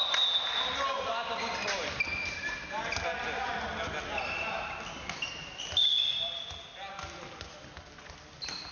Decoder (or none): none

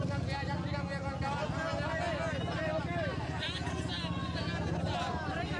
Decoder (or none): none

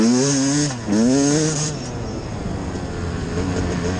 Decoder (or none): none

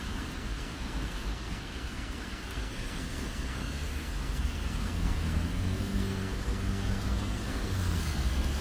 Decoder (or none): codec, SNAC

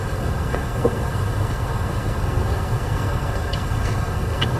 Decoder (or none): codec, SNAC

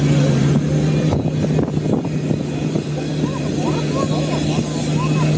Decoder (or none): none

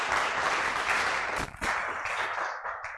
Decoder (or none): none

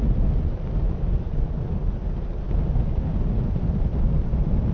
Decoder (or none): none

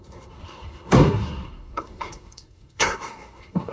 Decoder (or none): codec, SNAC